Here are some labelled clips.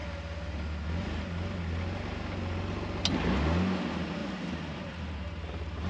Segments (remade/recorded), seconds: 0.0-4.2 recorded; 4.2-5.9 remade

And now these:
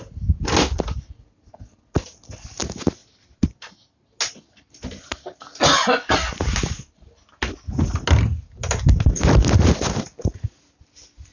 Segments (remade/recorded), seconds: 0.0-11.3 recorded

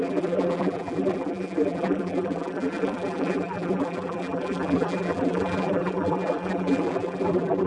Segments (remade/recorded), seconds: 0.0-7.7 remade

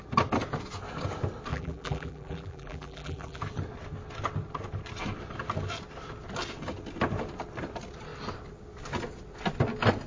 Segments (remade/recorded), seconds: 0.0-1.5 recorded; 1.5-3.4 remade; 3.4-10.1 recorded

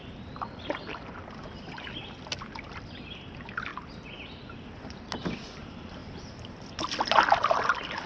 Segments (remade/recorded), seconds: 0.0-8.1 recorded

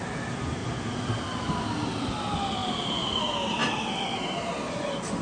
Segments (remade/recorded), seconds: 0.0-0.6 recorded; 0.6-1.2 remade; 1.2-2.6 recorded; 2.6-3.2 remade; 3.2-5.2 recorded

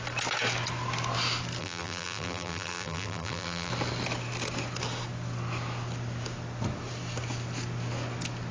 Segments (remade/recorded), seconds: 0.0-1.6 recorded; 1.6-3.7 remade; 3.7-8.5 recorded